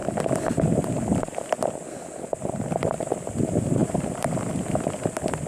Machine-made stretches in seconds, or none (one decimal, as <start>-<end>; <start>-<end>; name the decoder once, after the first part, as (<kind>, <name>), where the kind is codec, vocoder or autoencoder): 3.8-4.4 (vocoder, BigVGAN v2)